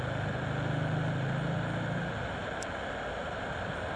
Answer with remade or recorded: recorded